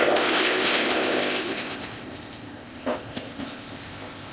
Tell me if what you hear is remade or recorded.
remade